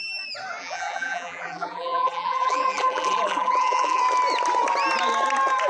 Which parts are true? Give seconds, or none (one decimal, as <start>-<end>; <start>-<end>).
0.0-0.6; 4.0-5.7